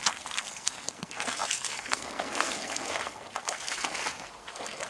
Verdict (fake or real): fake